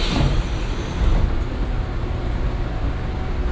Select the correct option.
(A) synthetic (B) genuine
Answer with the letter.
B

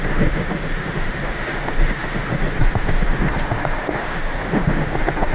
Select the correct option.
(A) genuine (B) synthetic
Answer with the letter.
B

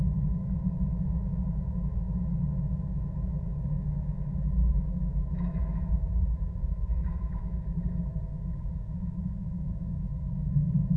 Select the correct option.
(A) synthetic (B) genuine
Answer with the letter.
A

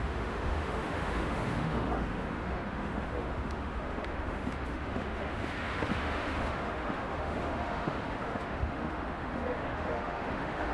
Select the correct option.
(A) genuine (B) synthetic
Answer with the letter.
B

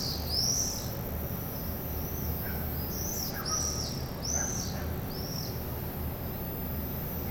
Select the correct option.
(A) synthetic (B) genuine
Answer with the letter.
B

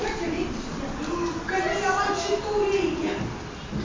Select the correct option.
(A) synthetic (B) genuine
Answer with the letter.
B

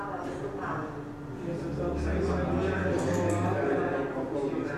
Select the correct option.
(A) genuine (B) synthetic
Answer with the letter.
A